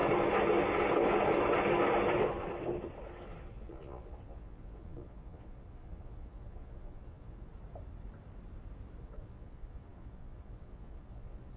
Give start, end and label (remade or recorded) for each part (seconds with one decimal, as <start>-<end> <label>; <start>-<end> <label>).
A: 0.0-3.5 recorded; 3.5-7.5 remade; 7.5-9.0 recorded; 9.0-11.6 remade